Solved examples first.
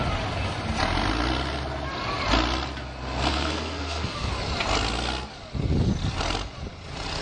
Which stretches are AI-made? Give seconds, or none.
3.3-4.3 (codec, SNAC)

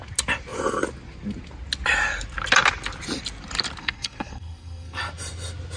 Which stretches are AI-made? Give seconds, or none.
3.8-5.0 (codec, SNAC)

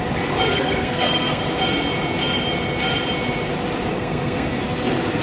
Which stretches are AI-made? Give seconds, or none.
0.5-1.4 (codec, SNAC); 3.9-4.6

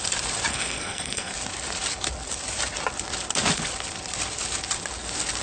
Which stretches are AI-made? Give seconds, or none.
0.5-1.3 (codec, SNAC)